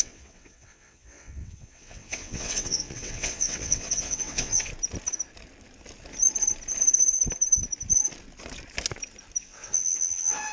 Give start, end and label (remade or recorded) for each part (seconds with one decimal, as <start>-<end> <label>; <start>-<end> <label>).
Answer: 0.0-4.7 remade; 4.7-9.4 recorded; 9.4-10.5 remade